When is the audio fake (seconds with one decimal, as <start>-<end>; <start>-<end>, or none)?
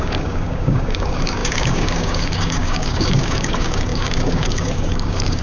0.0-5.4